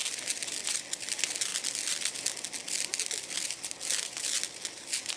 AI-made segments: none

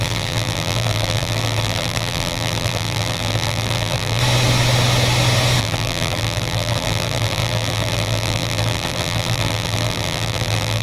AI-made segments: 0.0-4.2; 5.6-10.8

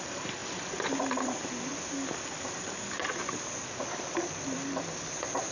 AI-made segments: 0.0-1.7; 4.3-5.5

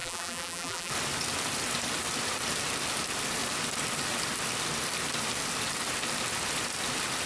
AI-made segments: 0.0-0.9